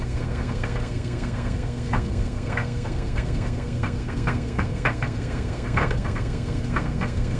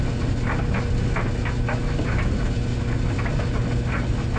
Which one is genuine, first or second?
second